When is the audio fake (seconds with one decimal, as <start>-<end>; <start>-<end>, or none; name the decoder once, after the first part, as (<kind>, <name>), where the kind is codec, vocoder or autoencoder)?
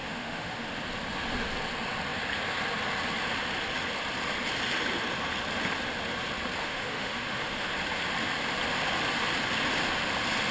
0.0-0.7 (autoencoder, DAC-VAE); 6.6-7.7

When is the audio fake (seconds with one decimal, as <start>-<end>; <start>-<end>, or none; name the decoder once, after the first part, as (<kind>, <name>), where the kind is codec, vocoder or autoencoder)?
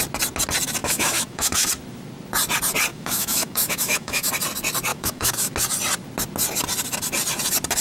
0.8-1.7 (autoencoder, DAC-VAE); 2.9-4.3; 4.9-5.5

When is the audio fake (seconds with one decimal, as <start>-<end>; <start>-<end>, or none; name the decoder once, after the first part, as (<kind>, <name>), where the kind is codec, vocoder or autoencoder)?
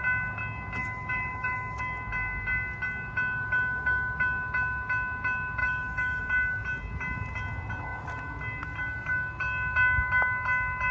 0.8-1.8 (autoencoder, DAC-VAE); 5.6-6.2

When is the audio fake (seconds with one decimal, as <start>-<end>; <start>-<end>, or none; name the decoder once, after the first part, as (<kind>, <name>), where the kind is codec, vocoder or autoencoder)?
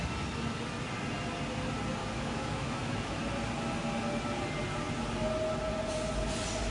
2.0-3.2 (autoencoder, DAC-VAE)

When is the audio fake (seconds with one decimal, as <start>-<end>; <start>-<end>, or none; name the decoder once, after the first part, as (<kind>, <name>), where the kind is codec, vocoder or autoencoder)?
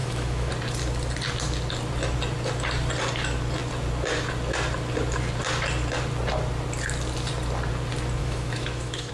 0.0-0.5 (autoencoder, DAC-VAE); 8.2-9.1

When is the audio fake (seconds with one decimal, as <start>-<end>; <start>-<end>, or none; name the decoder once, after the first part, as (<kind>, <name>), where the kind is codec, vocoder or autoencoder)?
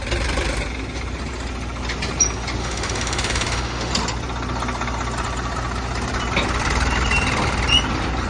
2.6-3.9 (autoencoder, DAC-VAE)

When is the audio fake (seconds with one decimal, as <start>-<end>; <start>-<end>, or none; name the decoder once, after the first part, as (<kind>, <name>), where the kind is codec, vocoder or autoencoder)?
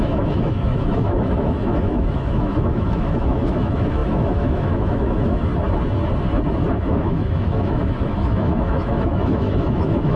0.0-5.5 (autoencoder, DAC-VAE); 6.8-10.2